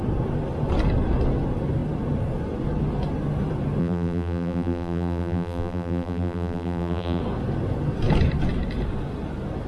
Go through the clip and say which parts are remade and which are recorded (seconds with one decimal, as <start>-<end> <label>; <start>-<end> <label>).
0.0-3.8 recorded; 3.8-7.2 remade; 7.2-9.7 recorded